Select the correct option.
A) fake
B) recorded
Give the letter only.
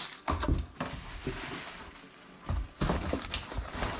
B